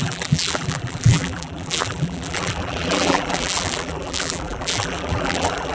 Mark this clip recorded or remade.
remade